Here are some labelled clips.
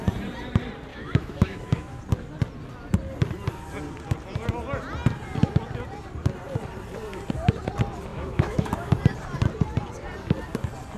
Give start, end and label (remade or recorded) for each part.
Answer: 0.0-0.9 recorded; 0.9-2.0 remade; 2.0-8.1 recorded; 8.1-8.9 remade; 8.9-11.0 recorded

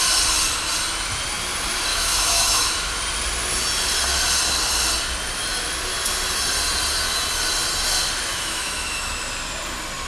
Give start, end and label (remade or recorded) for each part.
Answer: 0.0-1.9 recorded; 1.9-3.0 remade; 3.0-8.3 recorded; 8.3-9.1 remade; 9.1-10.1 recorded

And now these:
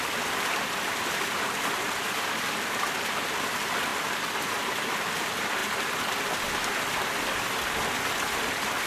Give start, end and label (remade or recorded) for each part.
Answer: 0.0-8.9 recorded

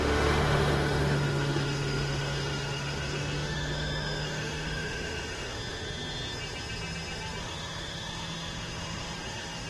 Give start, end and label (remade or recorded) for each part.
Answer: 0.0-5.6 remade; 5.6-7.4 recorded; 7.4-9.7 remade